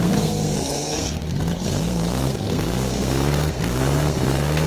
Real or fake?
fake